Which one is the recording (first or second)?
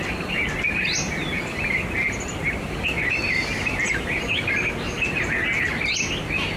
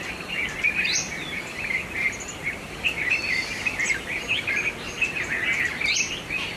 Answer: first